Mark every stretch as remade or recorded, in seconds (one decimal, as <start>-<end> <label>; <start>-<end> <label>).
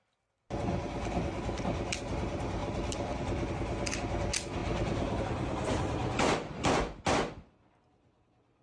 0.0-2.6 recorded; 2.6-3.5 remade; 3.5-4.6 recorded; 4.6-5.2 remade; 5.2-8.6 recorded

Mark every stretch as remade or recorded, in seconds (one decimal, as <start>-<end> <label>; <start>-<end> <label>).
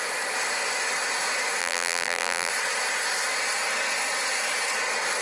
0.0-1.6 recorded; 1.6-2.5 remade; 2.5-5.2 recorded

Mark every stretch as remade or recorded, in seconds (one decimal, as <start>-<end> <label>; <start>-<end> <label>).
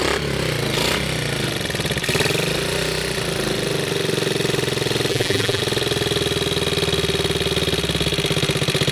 0.0-5.1 recorded; 5.1-5.6 remade; 5.6-8.9 recorded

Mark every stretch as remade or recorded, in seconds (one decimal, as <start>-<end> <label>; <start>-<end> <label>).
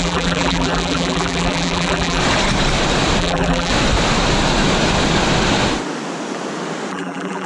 0.0-2.2 remade; 2.2-3.2 recorded; 3.2-3.7 remade; 3.7-6.9 recorded; 6.9-7.5 remade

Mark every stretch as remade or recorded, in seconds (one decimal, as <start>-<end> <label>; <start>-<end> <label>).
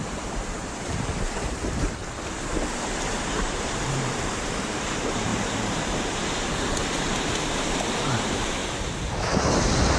0.0-2.0 remade; 2.0-3.2 recorded; 3.2-5.3 remade; 5.3-6.7 recorded; 6.7-8.6 remade; 8.6-10.0 recorded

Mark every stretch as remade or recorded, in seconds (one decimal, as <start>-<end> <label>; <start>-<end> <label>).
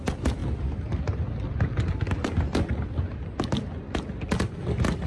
0.0-5.1 recorded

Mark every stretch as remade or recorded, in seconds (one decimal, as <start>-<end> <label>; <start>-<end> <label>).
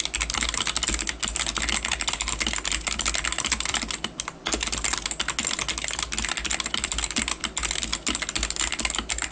0.0-9.3 recorded